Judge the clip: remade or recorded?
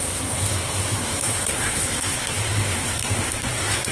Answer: remade